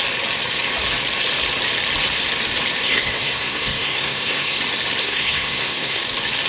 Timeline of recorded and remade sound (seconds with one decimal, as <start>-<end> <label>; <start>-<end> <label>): 0.0-2.8 recorded; 2.8-4.6 remade; 4.6-5.0 recorded; 5.0-6.0 remade; 6.0-6.5 recorded